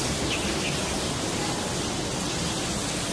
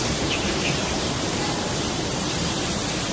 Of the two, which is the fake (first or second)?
second